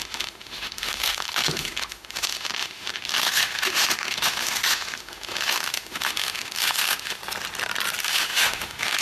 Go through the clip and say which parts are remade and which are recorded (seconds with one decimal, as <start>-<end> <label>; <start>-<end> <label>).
0.0-7.2 remade; 7.2-8.0 recorded; 8.0-9.0 remade